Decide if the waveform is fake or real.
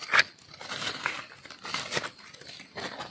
real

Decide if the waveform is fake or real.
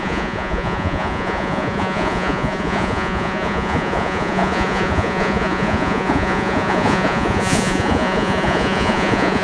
fake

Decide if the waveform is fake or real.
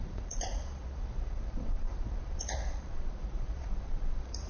fake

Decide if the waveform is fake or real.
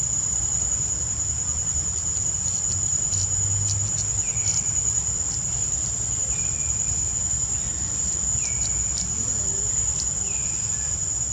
real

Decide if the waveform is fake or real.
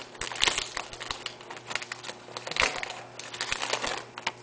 real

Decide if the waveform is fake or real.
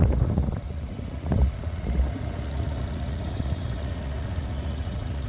fake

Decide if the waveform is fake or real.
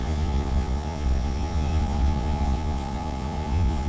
fake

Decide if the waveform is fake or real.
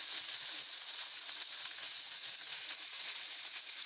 fake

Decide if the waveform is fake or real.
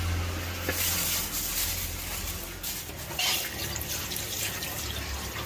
real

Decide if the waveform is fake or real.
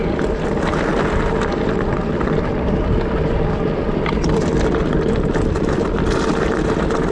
real